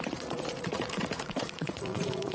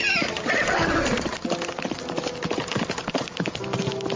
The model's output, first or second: first